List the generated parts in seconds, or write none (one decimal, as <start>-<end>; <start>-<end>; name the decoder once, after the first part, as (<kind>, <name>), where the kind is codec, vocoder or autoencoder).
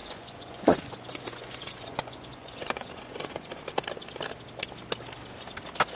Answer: 0.0-3.6 (vocoder, Vocos)